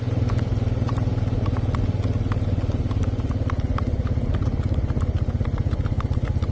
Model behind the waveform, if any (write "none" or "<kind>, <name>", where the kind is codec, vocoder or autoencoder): none